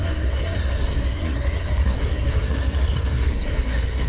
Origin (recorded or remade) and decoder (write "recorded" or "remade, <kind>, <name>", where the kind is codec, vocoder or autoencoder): remade, codec, SNAC